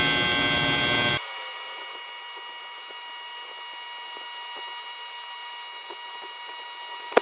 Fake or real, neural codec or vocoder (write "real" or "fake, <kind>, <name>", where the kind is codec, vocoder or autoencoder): real